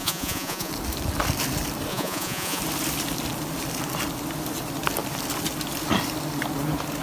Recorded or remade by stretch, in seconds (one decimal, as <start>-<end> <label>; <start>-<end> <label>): 0.0-0.7 remade; 0.7-1.9 recorded; 1.9-2.6 remade; 2.6-7.0 recorded